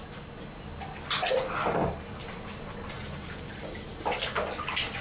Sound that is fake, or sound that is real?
real